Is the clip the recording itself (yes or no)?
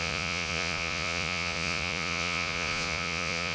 no